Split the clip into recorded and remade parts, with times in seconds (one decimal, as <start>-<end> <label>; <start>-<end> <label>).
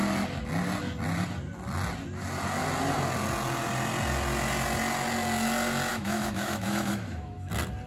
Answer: 0.0-5.9 recorded; 5.9-7.5 remade; 7.5-7.9 recorded